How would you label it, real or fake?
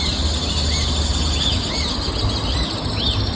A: real